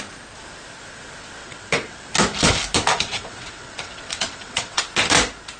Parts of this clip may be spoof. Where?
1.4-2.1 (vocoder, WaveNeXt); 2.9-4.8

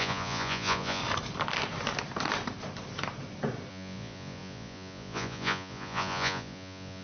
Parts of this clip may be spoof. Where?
0.0-1.0 (vocoder, Vocos); 3.7-7.0

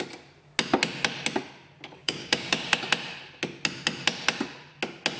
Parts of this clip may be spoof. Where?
2.0-2.8 (codec, DAC)

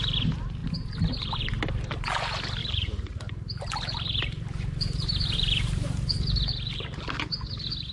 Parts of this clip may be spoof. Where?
2.6-7.1 (vocoder, BigVGAN v2)

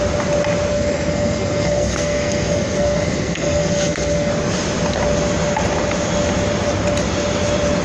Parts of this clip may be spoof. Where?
0.7-4.3 (codec, SNAC)

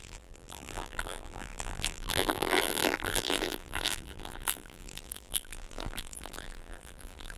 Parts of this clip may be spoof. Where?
0.0-7.4 (vocoder, BigVGAN v2)

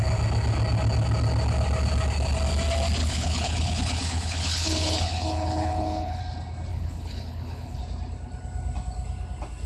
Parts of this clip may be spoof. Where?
3.0-6.2 (codec, HILCodec); 6.7-7.8